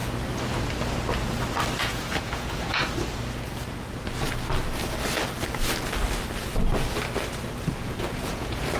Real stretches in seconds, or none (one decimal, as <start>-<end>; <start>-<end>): 0.0-1.8; 2.8-7.7